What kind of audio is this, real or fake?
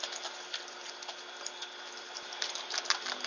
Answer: real